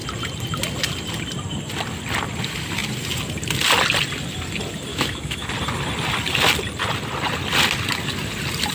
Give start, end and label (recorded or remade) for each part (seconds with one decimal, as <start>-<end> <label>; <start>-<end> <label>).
0.0-4.9 recorded; 4.9-5.5 remade; 5.5-8.7 recorded